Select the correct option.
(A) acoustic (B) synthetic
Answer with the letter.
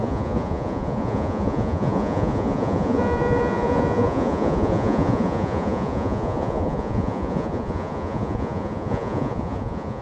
B